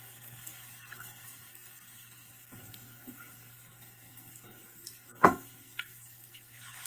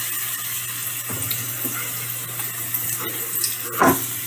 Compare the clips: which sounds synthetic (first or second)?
first